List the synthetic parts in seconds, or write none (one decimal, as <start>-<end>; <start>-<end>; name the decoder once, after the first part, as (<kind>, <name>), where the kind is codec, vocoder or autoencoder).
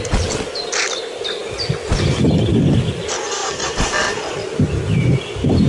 none